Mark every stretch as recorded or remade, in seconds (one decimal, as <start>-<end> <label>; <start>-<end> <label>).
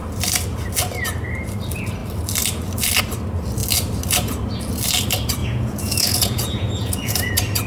0.0-5.4 recorded; 5.4-7.3 remade; 7.3-7.7 recorded